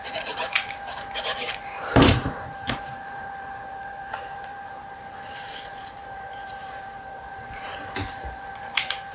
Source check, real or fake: fake